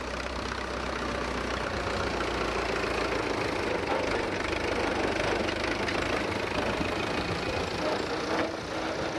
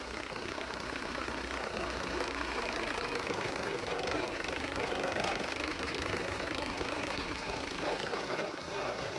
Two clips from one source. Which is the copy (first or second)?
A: second